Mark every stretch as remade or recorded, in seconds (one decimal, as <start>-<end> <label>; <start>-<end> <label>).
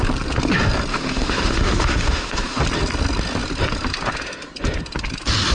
0.0-0.9 recorded; 0.9-2.6 remade; 2.6-5.5 recorded